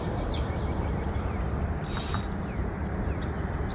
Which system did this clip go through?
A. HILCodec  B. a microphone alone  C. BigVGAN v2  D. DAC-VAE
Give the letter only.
B